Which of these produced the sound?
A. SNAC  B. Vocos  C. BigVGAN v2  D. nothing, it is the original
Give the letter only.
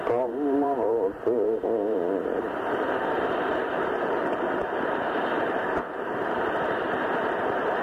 C